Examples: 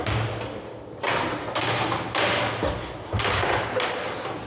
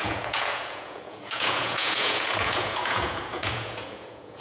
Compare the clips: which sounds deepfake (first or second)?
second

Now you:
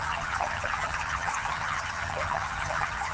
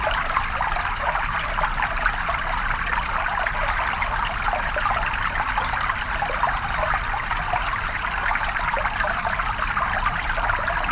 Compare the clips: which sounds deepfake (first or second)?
first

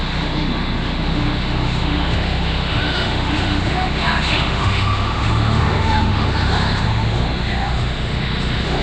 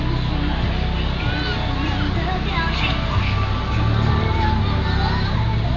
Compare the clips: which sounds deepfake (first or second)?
first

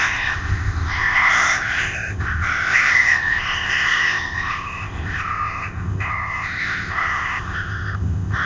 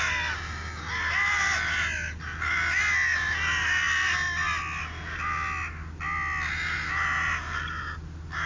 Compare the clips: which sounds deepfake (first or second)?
first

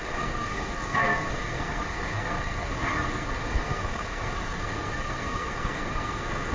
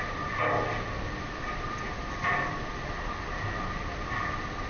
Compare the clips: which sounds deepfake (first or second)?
first